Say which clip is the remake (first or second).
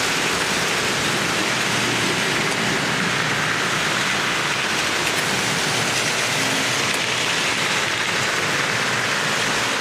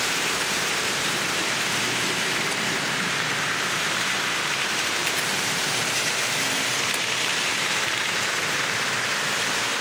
second